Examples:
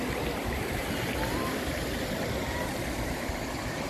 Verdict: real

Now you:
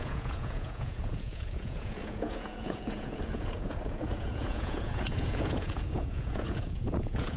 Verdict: fake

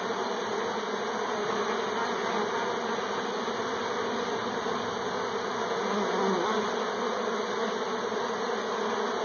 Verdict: real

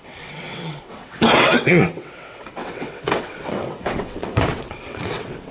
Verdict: fake